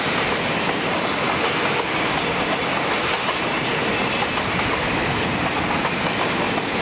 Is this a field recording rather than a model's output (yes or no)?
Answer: yes